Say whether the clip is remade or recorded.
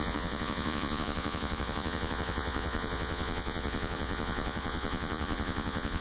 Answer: remade